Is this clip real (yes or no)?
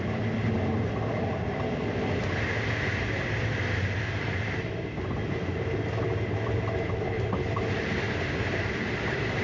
yes